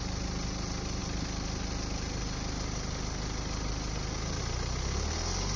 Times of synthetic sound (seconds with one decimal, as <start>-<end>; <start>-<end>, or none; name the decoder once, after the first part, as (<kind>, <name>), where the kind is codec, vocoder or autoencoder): none